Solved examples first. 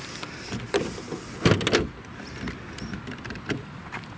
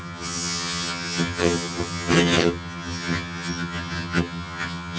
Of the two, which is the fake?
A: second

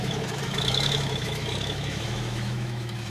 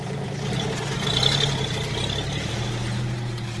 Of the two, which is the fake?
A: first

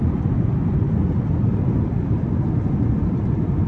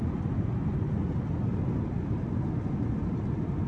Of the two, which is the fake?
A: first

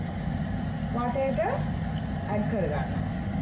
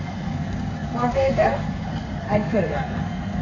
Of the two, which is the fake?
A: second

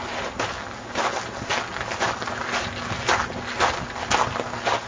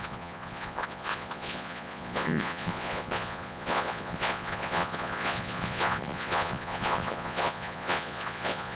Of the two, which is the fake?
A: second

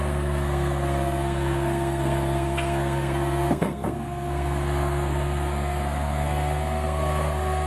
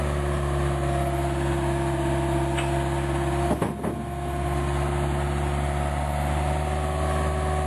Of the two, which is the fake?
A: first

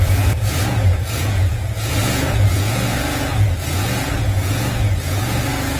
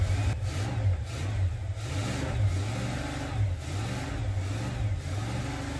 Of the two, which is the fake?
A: first